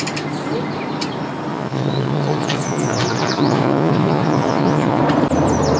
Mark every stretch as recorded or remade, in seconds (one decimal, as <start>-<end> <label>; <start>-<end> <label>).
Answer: 0.0-1.5 recorded; 1.5-5.0 remade; 5.0-5.8 recorded

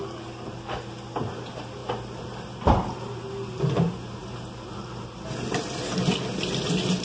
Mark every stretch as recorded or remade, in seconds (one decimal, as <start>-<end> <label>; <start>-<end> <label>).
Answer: 0.0-7.0 recorded